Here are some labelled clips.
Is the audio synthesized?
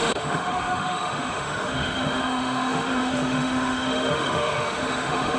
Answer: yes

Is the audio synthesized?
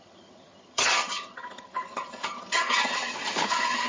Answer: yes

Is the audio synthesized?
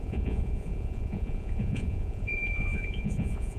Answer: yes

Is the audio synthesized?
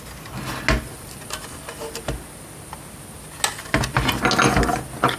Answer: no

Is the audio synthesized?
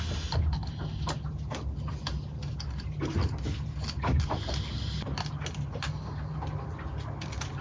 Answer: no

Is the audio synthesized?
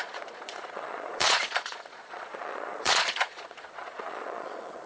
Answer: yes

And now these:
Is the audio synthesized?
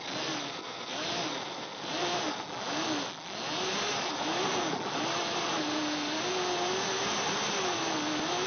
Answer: no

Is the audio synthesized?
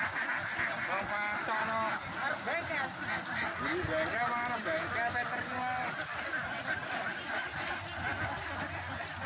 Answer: no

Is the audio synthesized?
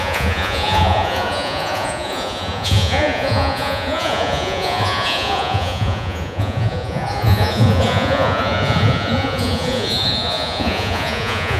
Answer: yes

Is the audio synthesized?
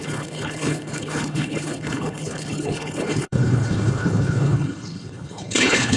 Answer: yes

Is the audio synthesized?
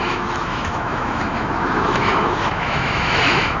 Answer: yes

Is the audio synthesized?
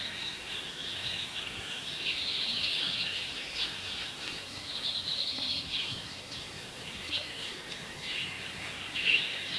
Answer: yes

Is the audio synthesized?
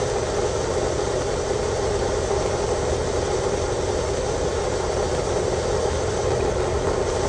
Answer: no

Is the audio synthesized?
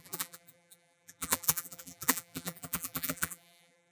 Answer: yes